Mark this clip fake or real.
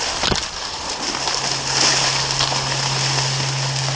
real